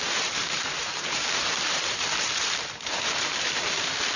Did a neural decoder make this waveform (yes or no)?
yes